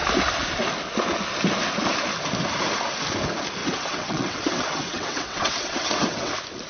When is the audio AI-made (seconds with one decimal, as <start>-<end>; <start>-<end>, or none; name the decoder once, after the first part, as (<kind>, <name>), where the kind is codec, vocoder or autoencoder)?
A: 3.6-6.3 (vocoder, WaveNeXt)